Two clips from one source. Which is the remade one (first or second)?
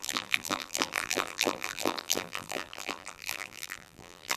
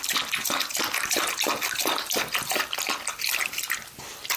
first